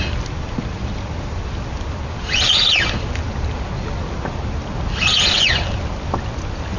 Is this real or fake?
real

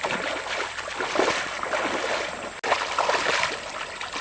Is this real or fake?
real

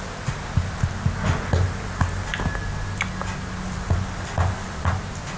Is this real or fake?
real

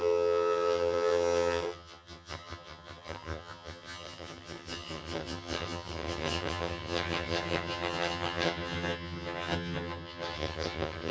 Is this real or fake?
fake